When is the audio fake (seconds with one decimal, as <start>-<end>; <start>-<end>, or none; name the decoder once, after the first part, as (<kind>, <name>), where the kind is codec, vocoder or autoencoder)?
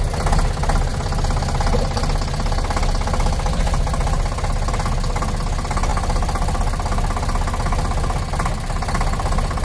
none